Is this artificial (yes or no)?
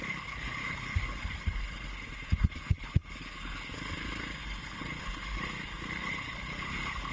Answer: yes